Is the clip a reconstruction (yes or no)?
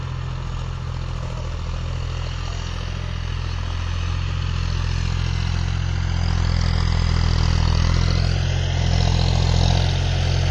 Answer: no